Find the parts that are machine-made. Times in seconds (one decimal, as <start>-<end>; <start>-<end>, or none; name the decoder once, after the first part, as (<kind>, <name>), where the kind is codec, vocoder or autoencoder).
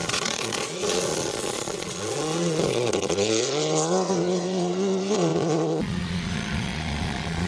0.0-7.5 (vocoder, Vocos)